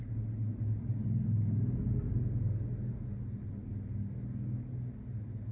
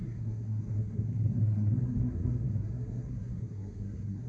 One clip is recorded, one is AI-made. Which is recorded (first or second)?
first